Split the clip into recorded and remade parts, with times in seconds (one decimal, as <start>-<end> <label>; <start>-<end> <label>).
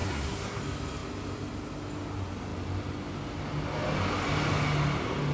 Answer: 0.0-0.6 remade; 0.6-5.3 recorded